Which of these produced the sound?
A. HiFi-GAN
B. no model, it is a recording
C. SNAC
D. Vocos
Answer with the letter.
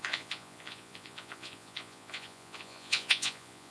D